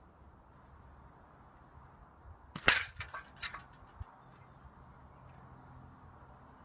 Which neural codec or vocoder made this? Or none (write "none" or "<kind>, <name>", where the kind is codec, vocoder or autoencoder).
none